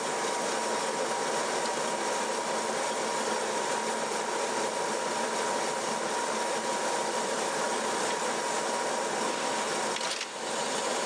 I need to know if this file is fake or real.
real